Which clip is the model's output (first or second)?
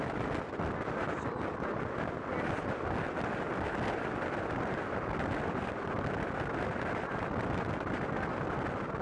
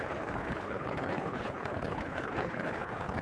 second